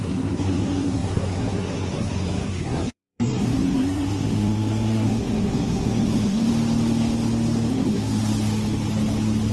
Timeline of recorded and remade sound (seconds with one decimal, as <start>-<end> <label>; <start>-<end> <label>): 0.0-6.5 remade; 6.5-7.7 recorded; 7.7-8.2 remade; 8.2-9.5 recorded